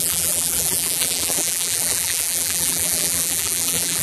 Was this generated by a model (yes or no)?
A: yes